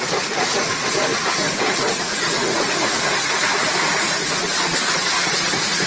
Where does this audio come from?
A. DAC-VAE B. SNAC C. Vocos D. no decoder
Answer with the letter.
C